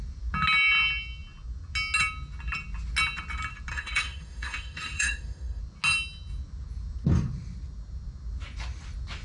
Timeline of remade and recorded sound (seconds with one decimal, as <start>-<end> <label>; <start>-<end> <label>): 0.0-3.7 recorded; 3.7-5.6 remade; 5.6-9.2 recorded